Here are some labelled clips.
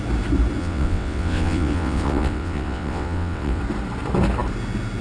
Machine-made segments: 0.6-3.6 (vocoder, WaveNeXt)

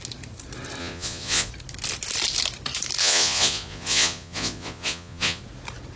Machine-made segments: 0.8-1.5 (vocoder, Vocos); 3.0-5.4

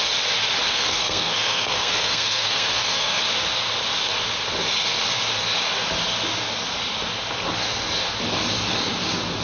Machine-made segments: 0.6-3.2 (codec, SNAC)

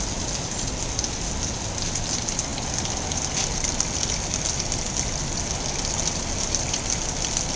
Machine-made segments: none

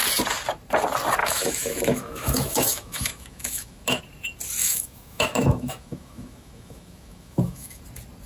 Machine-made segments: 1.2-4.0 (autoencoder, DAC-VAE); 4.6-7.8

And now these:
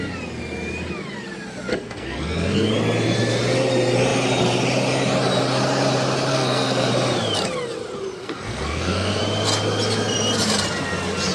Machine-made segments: 1.7-2.7 (codec, SNAC); 6.3-6.9; 8.2-9.2

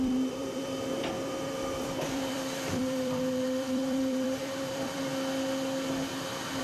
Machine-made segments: 0.0-5.1 (vocoder, BigVGAN v2)